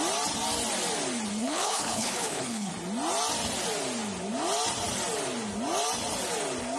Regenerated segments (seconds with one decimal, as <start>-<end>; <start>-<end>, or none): 1.4-2.7